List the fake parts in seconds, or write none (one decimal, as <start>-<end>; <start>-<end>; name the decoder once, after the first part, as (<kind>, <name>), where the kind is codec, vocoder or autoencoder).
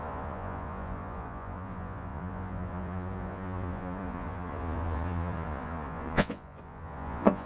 0.0-7.5 (vocoder, Vocos)